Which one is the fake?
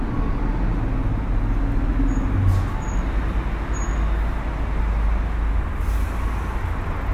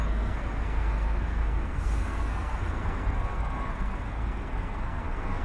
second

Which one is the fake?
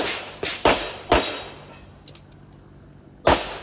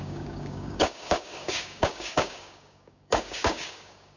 second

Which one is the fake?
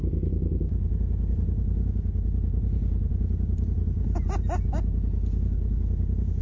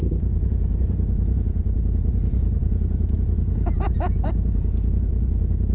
second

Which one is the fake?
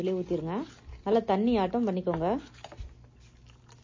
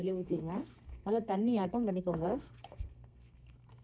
second